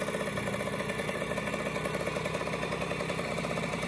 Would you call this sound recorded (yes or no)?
yes